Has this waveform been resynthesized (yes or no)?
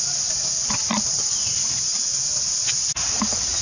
no